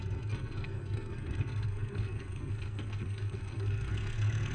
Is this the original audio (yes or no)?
no